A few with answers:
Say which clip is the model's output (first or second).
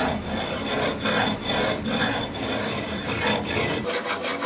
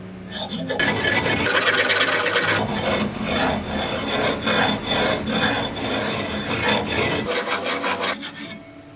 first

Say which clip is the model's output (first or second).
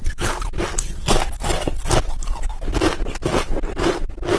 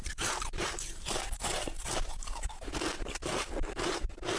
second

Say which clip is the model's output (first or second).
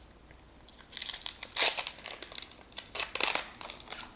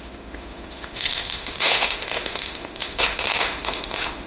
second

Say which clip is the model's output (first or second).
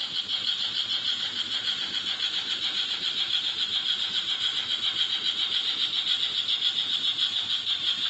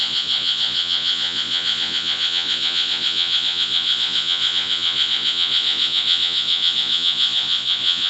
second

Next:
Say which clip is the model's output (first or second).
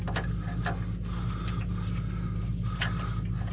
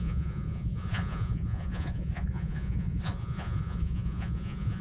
second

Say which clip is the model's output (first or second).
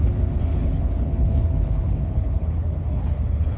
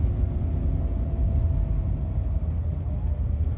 first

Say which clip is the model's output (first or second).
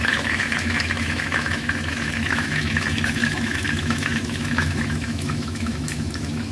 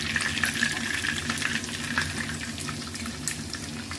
first